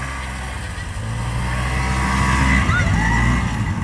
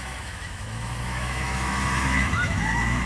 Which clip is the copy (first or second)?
second